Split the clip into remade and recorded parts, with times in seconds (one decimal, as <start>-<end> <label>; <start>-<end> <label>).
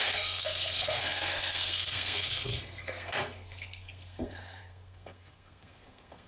0.0-6.3 remade